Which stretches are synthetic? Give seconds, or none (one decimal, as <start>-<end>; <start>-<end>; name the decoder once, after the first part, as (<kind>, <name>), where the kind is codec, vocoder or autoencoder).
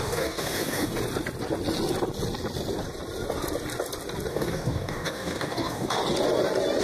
0.0-0.9 (codec, DAC); 4.3-6.0